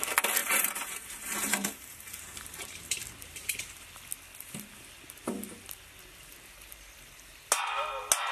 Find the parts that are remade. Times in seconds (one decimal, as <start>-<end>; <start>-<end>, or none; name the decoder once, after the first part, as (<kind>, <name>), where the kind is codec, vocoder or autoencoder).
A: 0.4-3.7 (vocoder, BigVGAN v2); 6.3-7.3